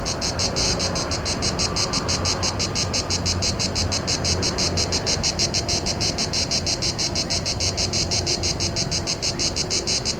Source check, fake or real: fake